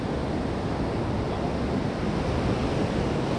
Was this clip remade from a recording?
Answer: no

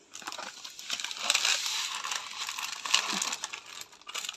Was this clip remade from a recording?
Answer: no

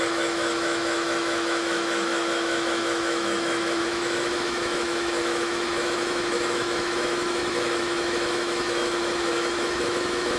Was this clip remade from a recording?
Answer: yes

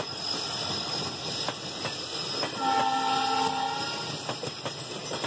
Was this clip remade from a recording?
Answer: no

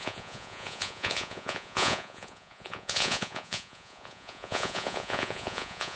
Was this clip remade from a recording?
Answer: yes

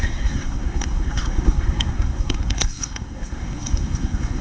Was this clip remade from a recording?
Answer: yes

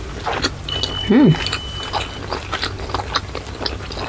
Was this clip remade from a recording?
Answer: no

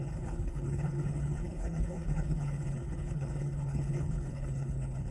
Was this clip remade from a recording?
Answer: yes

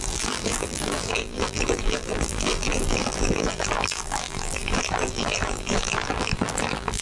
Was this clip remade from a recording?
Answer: yes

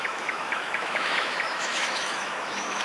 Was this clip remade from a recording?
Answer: yes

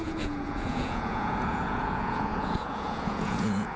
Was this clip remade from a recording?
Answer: yes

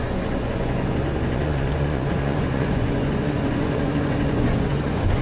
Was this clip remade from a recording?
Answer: yes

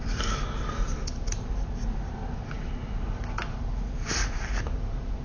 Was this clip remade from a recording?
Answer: no